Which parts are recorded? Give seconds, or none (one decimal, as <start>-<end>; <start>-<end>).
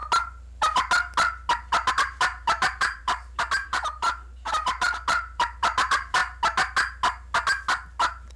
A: 0.0-1.9; 6.2-8.4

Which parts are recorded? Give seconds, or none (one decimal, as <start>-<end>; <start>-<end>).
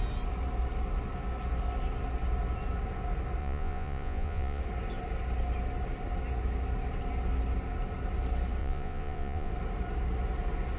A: 0.0-3.4; 4.6-8.6; 9.5-10.8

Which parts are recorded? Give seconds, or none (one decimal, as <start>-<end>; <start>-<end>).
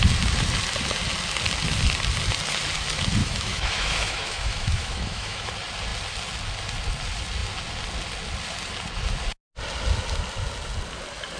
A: 0.0-3.2; 5.5-11.4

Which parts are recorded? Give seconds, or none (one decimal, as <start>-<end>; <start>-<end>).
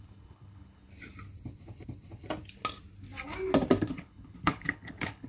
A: 0.9-3.9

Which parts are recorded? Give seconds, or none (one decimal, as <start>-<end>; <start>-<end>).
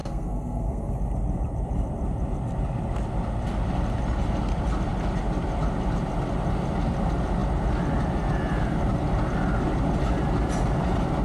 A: 0.9-11.2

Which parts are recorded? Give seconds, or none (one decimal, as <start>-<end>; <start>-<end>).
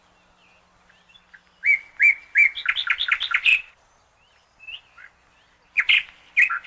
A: 0.0-3.5; 4.6-6.7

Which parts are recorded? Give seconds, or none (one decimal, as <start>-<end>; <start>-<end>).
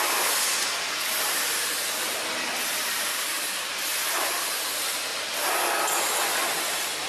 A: 0.0-3.1; 3.7-7.1